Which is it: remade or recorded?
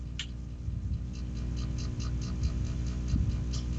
recorded